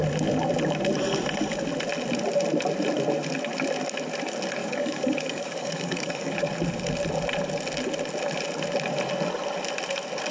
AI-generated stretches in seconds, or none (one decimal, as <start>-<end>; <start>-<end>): 4.6-6.5